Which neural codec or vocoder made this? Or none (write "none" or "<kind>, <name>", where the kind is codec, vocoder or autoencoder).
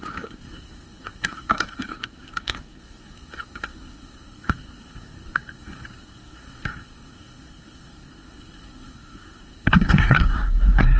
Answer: codec, SNAC